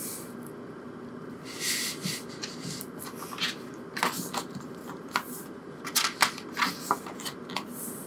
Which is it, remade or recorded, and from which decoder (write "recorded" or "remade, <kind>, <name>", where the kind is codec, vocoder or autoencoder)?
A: recorded